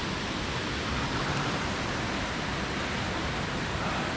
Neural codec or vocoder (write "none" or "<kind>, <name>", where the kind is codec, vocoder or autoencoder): none